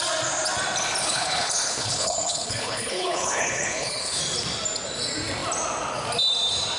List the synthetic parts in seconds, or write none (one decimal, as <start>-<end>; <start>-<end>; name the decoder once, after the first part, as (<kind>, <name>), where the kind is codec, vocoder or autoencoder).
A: 1.0-4.2 (codec, HILCodec)